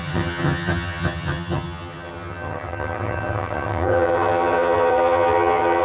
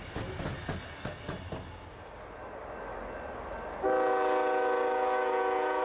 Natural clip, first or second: second